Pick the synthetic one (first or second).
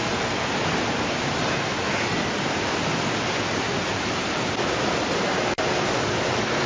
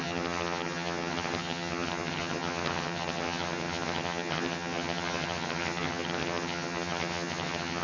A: second